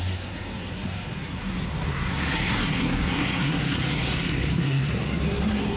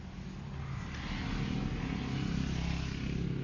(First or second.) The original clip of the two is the second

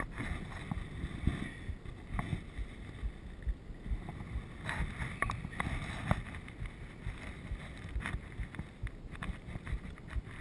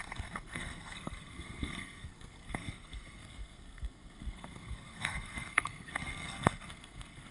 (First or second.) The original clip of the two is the first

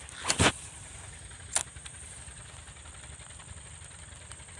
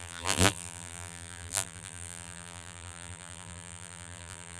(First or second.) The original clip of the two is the first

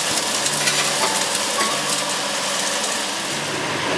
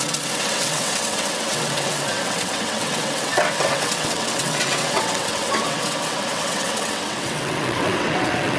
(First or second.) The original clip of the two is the first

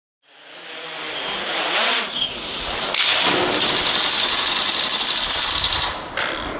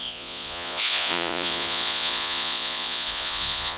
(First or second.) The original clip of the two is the first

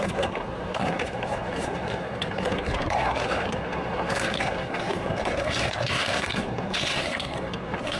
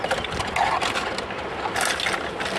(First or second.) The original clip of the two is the second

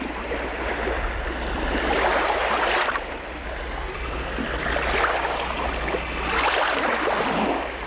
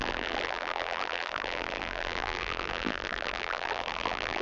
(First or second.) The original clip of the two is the first